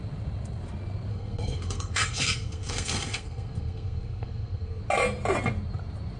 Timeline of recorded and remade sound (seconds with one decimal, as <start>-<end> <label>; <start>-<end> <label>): 0.0-1.1 recorded; 1.1-4.8 remade; 4.8-6.2 recorded